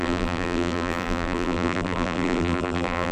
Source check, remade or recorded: remade